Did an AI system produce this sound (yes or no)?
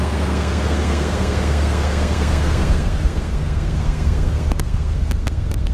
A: yes